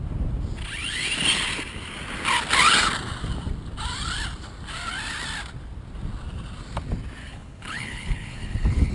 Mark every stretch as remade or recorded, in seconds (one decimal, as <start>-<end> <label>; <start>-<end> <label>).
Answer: 0.0-7.2 recorded; 7.2-8.9 remade